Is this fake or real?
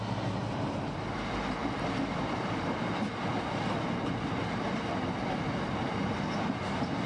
real